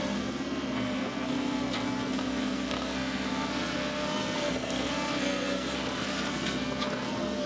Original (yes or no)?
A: no